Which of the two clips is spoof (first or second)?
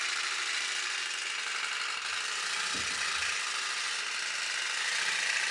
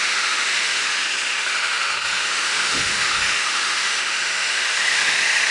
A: second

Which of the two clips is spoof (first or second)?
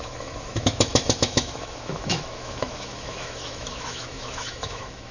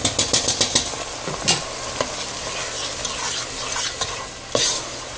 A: first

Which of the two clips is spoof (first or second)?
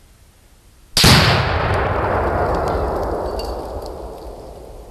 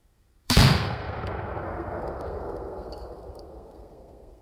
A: second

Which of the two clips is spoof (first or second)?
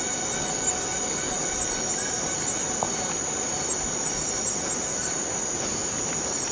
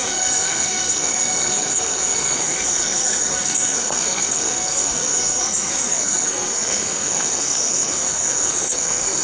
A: second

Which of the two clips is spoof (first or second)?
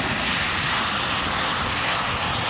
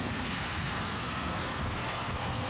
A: second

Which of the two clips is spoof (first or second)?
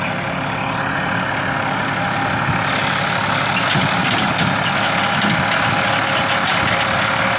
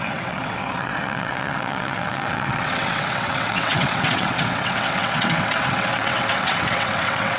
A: second